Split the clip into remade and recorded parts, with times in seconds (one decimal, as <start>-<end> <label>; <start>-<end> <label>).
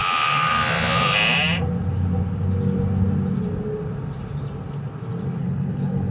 0.0-5.4 recorded; 5.4-6.1 remade